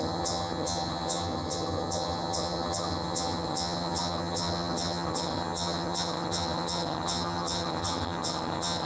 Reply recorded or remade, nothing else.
remade